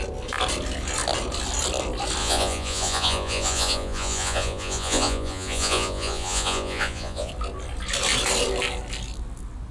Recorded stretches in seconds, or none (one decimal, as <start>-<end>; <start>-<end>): 0.0-2.2; 7.3-9.7